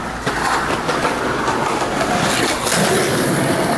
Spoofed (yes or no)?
no